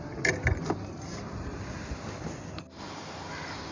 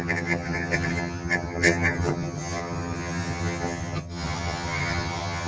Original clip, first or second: first